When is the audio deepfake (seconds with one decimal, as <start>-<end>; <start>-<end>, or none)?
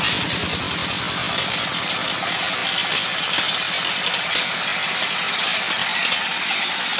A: 1.2-1.9